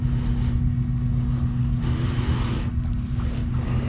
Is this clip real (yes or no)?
yes